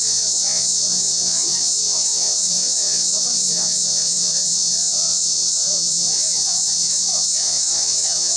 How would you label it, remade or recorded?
remade